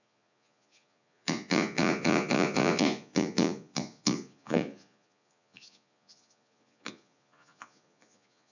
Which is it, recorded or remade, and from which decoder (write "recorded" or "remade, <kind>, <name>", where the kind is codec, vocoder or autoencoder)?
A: remade, vocoder, Vocos